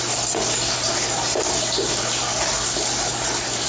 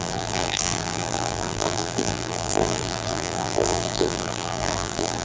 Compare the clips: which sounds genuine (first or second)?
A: first